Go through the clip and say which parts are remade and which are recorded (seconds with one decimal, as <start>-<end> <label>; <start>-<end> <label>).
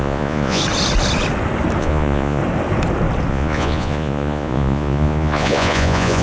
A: 0.0-0.6 remade; 0.6-1.8 recorded; 1.8-2.4 remade; 2.4-3.3 recorded; 3.3-6.2 remade